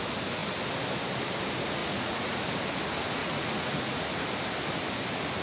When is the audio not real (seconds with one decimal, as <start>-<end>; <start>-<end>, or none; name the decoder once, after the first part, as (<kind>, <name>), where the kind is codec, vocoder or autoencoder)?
1.8-2.4 (vocoder, Vocos); 3.2-4.0